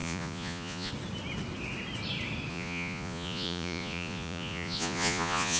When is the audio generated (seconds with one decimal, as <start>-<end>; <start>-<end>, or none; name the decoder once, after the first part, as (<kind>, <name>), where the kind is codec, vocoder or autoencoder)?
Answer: 0.0-0.9 (vocoder, Vocos); 2.5-5.6